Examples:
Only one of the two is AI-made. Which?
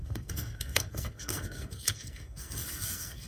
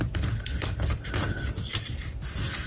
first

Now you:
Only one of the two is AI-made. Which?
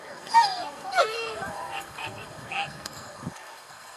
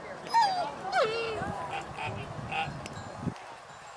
first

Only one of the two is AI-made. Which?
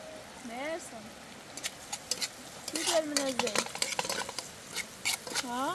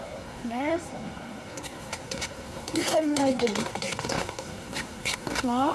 second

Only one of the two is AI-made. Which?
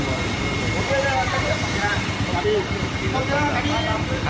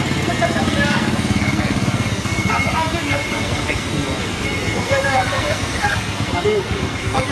second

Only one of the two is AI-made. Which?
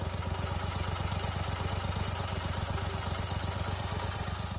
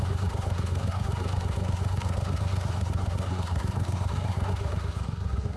second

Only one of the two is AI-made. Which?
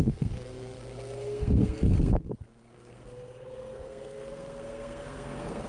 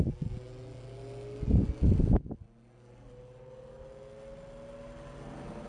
first